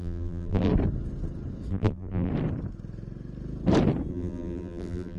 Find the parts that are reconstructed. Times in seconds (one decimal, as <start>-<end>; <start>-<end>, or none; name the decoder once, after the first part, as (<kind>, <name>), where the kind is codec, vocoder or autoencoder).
0.0-0.7 (vocoder, BigVGAN v2); 1.7-2.3; 4.1-5.2